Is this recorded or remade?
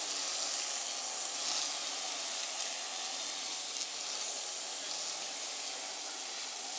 recorded